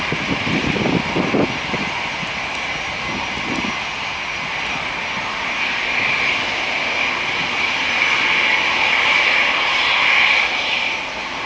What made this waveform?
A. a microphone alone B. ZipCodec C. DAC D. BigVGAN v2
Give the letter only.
A